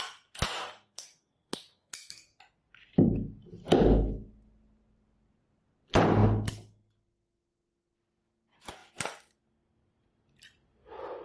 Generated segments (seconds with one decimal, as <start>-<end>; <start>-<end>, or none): 0.6-2.4